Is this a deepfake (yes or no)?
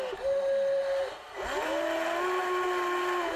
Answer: no